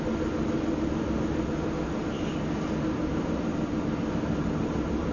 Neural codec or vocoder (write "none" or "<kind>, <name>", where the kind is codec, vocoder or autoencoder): none